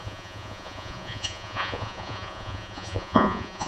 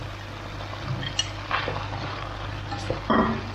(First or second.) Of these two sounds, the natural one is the second